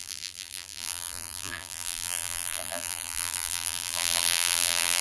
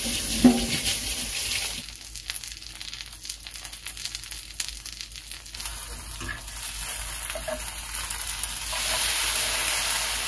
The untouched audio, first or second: second